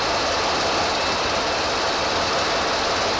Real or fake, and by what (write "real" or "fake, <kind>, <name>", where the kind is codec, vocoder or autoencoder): real